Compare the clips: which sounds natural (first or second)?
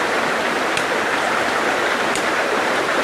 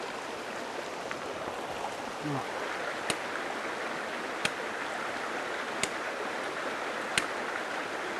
second